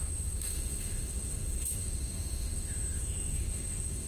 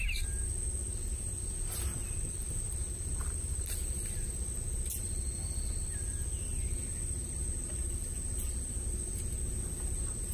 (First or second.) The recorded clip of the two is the second